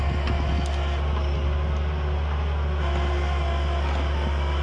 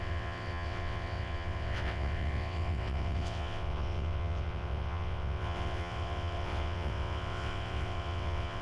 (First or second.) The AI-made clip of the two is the second